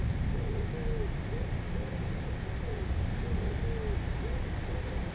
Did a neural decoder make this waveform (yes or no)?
no